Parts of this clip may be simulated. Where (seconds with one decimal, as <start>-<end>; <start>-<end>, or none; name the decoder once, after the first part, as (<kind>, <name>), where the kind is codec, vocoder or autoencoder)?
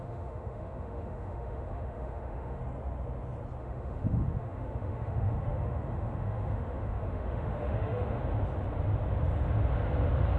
0.0-2.6 (autoencoder, DAC-VAE); 3.6-8.2